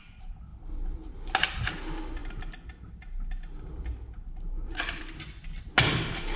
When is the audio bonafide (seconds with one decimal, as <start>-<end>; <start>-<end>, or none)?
0.0-6.4